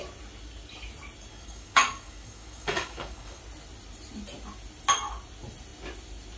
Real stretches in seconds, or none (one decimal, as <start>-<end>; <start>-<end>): 0.0-1.3; 3.4-6.4